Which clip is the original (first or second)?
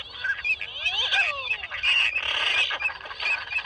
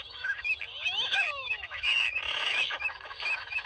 first